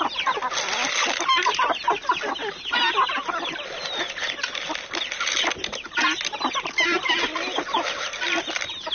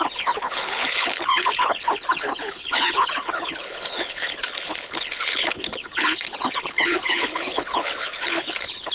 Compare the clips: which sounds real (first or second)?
first